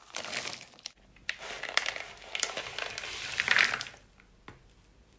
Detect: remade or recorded recorded